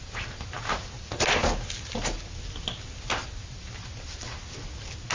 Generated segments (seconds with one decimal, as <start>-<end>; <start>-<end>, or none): none